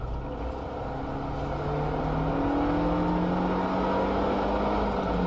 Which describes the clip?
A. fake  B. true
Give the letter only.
B